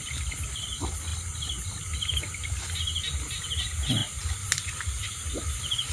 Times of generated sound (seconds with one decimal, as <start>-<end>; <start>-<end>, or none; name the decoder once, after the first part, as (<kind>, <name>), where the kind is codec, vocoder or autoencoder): none